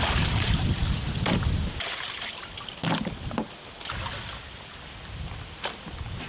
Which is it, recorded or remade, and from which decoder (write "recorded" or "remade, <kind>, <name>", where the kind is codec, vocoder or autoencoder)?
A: recorded